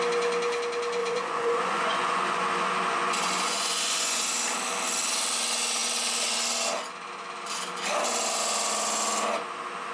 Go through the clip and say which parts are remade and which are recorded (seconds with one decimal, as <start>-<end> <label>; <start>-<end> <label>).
0.0-1.0 recorded; 1.0-4.2 remade; 4.2-9.9 recorded